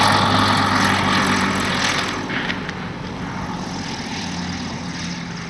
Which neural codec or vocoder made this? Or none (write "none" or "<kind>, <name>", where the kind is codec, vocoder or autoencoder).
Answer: none